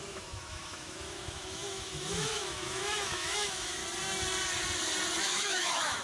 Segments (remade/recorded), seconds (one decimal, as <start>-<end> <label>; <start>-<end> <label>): 0.0-3.8 remade; 3.8-5.2 recorded; 5.2-6.0 remade